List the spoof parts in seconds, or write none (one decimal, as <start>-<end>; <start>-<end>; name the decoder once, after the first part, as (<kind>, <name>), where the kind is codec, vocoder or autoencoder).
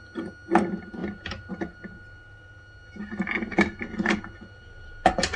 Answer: none